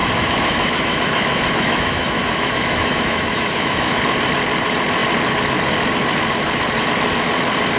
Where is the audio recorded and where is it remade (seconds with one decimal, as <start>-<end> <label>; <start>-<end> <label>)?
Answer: 0.0-4.0 remade; 4.0-7.8 recorded